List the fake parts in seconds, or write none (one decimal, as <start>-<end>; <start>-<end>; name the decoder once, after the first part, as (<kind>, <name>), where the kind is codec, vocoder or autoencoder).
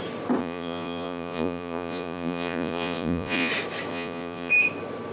0.4-3.5 (vocoder, Vocos); 3.9-4.5